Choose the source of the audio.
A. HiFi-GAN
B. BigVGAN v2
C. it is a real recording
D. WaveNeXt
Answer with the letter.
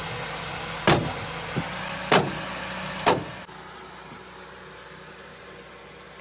C